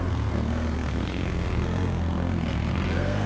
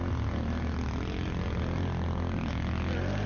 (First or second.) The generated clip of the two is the first